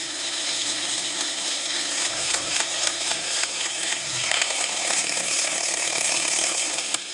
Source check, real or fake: fake